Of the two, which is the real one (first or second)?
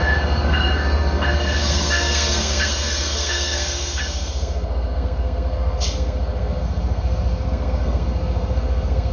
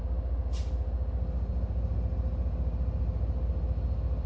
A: second